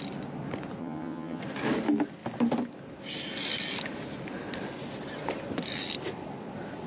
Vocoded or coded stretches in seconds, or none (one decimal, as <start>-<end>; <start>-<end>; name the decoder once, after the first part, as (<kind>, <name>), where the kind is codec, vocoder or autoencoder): 0.8-1.4 (vocoder, HiFi-GAN)